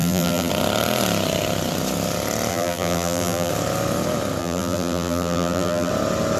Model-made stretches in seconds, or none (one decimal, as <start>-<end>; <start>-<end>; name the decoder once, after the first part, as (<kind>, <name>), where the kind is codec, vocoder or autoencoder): 0.0-0.5 (vocoder, BigVGAN v2); 2.5-3.5; 4.4-5.9